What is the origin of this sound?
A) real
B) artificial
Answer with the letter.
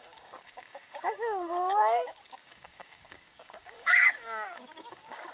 B